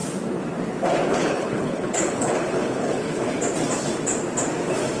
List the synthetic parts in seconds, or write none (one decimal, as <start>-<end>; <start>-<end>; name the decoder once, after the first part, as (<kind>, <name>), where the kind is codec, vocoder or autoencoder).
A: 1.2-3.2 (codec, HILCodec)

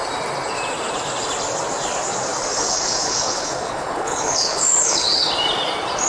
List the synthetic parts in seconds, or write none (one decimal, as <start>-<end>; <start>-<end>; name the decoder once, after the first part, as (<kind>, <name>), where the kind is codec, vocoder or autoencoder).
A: 2.5-5.3 (codec, HILCodec)

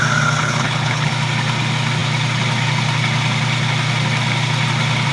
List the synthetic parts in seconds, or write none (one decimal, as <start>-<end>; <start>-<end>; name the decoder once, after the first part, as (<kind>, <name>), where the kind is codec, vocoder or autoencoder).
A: 0.4-1.1 (codec, HILCodec)

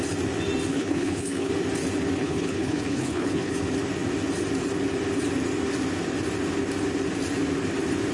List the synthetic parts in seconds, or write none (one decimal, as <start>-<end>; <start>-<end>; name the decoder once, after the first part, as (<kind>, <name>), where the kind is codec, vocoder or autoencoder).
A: 0.7-1.5 (codec, HILCodec); 2.2-3.5

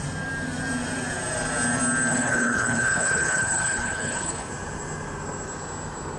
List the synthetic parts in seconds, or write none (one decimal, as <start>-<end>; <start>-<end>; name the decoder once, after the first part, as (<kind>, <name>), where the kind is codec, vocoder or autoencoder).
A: 2.1-4.5 (codec, HILCodec)